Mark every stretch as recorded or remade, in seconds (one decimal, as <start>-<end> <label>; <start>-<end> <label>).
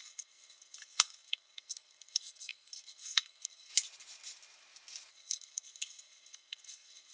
0.0-3.7 remade; 3.7-5.1 recorded; 5.1-7.1 remade